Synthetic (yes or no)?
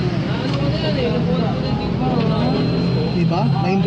no